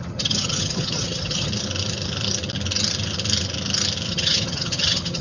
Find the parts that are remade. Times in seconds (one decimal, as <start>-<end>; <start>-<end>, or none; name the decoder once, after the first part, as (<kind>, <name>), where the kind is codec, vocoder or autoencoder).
0.0-1.5 (vocoder, HiFi-GAN); 4.1-5.2